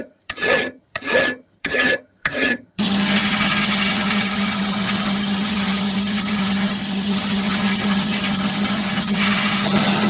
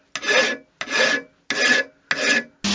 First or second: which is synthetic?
first